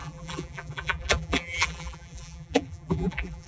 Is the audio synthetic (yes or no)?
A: yes